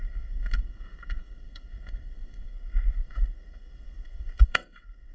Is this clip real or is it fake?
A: fake